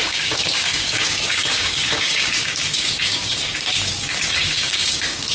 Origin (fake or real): fake